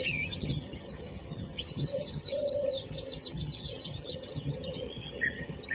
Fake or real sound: fake